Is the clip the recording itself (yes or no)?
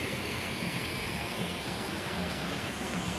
no